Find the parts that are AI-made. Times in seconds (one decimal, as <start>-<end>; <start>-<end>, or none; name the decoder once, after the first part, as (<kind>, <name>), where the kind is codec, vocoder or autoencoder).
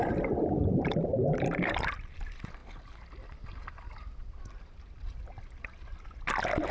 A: 0.7-2.2 (vocoder, BigVGAN v2)